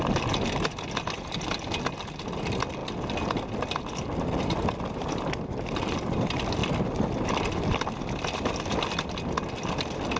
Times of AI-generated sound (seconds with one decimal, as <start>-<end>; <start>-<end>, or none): none